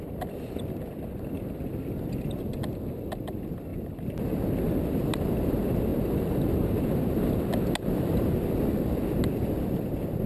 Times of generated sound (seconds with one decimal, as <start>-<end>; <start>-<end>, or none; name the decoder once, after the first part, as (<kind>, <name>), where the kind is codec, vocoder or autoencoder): none